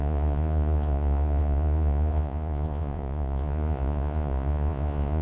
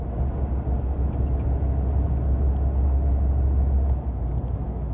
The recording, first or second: second